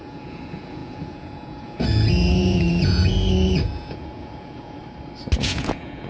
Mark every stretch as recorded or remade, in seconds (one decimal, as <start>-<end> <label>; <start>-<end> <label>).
0.0-4.8 remade; 4.8-5.4 recorded; 5.4-6.1 remade

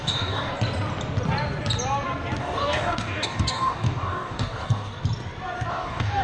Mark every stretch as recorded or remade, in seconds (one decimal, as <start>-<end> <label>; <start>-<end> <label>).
0.0-0.5 remade; 0.5-2.4 recorded; 2.4-5.0 remade; 5.0-5.7 recorded; 5.7-6.2 remade

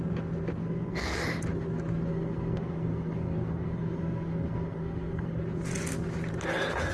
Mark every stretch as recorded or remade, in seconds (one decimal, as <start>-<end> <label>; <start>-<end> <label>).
0.0-0.6 recorded; 0.6-1.2 remade; 1.2-2.1 recorded; 2.1-5.4 remade; 5.4-6.9 recorded

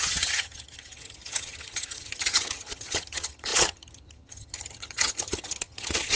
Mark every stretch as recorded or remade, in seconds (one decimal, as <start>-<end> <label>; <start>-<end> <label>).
0.0-6.2 remade

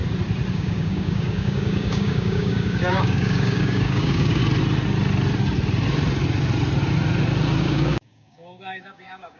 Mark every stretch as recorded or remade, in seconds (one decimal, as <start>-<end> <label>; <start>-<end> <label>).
0.0-0.5 recorded; 0.5-4.4 remade; 4.4-7.6 recorded; 7.6-9.4 remade